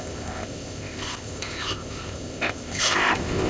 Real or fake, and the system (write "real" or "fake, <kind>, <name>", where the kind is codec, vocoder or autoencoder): fake, codec, ZipCodec